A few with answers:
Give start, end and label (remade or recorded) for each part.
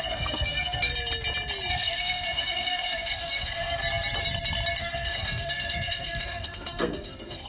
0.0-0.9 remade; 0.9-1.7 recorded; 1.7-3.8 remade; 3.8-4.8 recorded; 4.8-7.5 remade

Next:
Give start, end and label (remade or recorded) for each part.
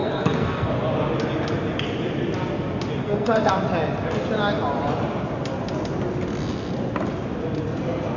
0.0-0.7 remade; 0.7-3.0 recorded; 3.0-3.5 remade; 3.5-8.2 recorded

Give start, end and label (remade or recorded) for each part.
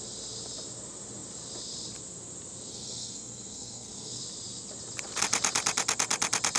0.0-2.7 recorded; 2.7-4.2 remade; 4.2-6.6 recorded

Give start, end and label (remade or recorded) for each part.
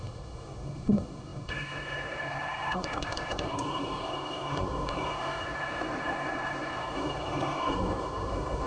0.0-8.7 remade